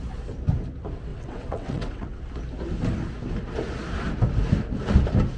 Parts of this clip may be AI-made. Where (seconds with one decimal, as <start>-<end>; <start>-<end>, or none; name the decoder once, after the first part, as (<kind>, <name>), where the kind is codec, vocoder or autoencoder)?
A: 1.1-2.2 (vocoder, WaveNeXt)